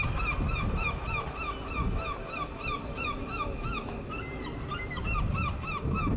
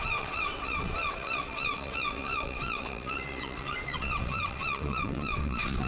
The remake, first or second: second